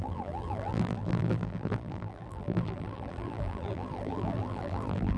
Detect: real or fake fake